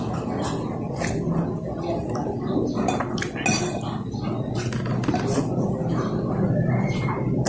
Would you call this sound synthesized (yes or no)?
no